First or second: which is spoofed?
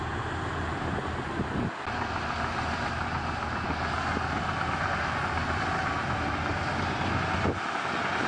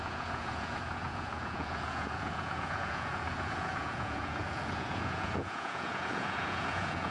second